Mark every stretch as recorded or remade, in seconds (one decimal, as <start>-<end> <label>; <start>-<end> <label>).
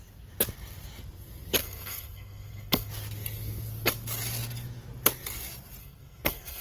0.0-1.6 recorded; 1.6-2.9 remade; 2.9-5.8 recorded; 5.8-6.6 remade